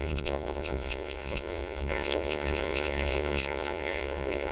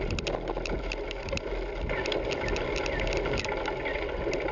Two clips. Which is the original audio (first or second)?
second